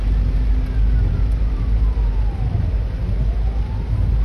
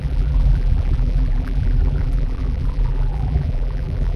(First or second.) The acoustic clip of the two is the first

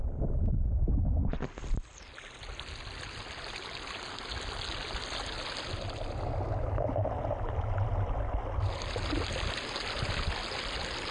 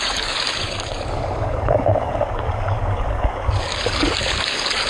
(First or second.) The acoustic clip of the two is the first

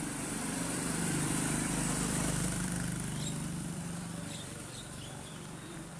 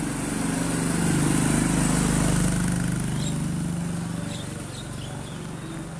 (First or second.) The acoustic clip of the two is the second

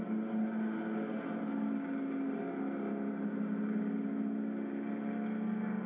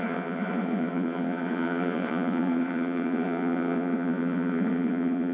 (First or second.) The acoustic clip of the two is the first